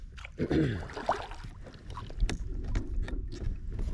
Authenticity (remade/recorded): recorded